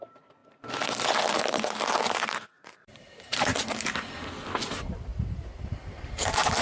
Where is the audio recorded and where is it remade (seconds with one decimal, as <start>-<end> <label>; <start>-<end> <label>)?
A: 0.0-0.4 remade; 0.4-1.3 recorded; 1.3-3.5 remade; 3.5-4.6 recorded; 4.6-5.1 remade; 5.1-5.6 recorded; 5.6-6.6 remade